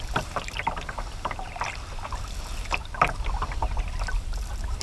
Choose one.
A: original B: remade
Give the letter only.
A